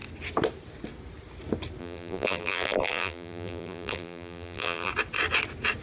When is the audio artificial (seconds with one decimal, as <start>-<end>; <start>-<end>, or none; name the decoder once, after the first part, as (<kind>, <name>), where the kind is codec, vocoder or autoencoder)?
1.8-4.9 (vocoder, BigVGAN v2)